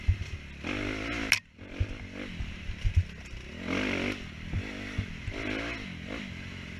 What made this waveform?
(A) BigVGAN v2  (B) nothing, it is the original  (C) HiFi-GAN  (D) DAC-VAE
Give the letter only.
B